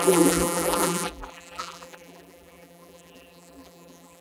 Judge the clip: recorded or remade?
remade